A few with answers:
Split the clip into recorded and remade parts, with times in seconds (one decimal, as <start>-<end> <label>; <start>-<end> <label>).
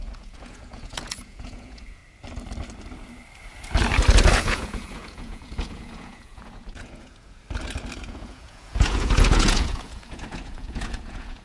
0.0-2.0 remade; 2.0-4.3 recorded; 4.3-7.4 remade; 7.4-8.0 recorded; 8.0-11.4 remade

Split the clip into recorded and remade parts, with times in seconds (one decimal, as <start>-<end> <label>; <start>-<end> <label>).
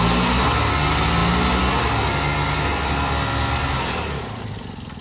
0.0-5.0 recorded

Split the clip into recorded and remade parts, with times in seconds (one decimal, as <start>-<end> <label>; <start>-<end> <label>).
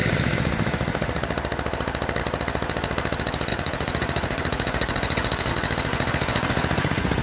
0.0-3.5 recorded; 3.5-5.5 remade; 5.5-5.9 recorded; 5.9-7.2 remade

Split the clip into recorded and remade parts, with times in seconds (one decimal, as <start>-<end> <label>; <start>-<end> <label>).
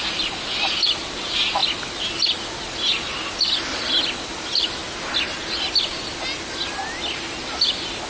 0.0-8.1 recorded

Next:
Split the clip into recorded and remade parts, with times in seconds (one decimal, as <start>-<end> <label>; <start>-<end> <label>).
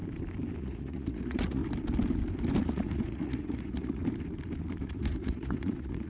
0.0-0.6 recorded; 0.6-1.6 remade; 1.6-2.6 recorded; 2.6-4.0 remade; 4.0-4.8 recorded; 4.8-6.1 remade